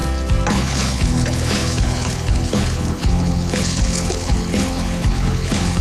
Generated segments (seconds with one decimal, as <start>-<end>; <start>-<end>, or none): 0.5-5.8